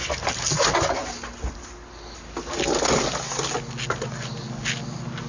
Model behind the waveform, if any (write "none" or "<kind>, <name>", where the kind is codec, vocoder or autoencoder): none